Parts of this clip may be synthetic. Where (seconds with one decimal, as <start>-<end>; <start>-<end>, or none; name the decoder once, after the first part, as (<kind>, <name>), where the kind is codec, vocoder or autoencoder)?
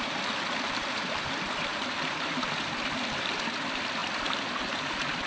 0.0-1.7 (vocoder, BigVGAN v2); 2.3-5.3